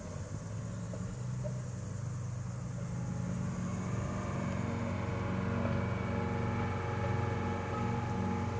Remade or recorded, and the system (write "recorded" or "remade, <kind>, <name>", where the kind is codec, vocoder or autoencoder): recorded